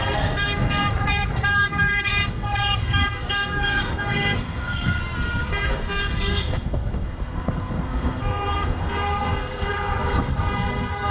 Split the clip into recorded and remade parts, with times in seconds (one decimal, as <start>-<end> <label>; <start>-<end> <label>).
0.0-5.0 remade; 5.0-5.5 recorded; 5.5-11.1 remade